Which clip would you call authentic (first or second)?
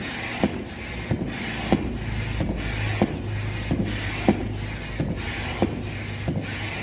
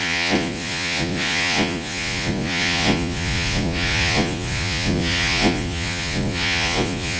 first